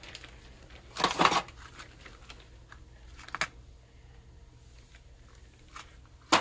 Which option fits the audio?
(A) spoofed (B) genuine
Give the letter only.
B